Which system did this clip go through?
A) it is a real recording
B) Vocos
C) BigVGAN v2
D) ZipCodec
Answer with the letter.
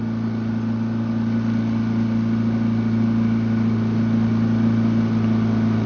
A